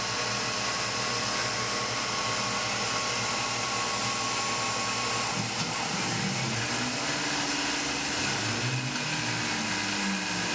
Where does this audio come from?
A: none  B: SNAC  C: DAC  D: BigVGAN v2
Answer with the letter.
A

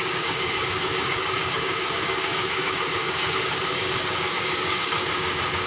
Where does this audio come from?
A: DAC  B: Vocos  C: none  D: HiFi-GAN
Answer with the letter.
A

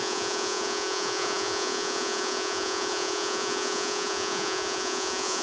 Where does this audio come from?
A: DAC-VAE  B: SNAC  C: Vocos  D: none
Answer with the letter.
C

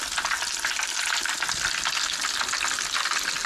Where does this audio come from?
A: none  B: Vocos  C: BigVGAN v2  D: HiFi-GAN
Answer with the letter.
A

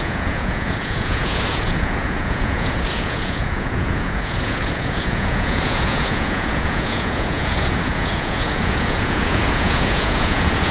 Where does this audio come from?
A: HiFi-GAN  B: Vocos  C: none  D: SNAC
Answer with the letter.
B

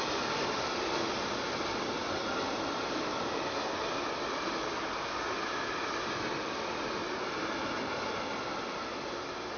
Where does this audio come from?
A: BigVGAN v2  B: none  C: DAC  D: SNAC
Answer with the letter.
B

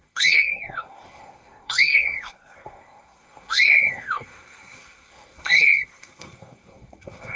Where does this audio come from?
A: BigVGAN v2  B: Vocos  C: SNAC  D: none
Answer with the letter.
C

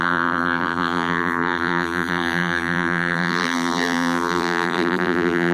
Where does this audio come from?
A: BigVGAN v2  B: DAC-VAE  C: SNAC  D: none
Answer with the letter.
A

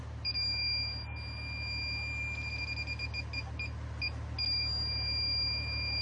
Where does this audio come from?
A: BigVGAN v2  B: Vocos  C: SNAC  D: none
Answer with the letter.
D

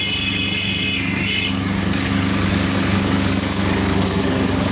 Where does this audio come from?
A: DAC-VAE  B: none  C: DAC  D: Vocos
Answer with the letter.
C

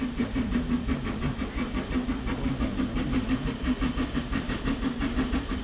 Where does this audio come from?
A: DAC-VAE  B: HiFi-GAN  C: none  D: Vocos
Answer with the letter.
C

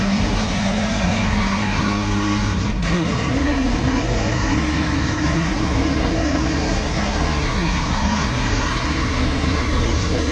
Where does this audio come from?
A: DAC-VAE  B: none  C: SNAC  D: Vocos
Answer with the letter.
C